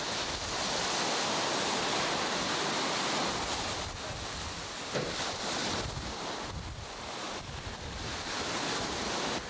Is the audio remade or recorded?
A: recorded